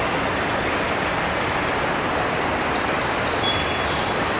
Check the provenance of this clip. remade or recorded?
recorded